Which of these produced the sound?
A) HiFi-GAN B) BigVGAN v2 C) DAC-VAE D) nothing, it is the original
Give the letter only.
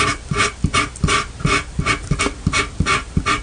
D